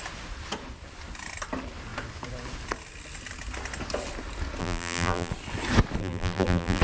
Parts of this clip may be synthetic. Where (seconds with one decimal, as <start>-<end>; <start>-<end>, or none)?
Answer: 4.6-5.3; 6.0-6.8

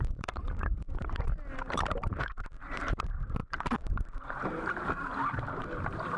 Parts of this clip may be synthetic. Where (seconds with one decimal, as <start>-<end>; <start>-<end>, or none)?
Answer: 0.0-6.2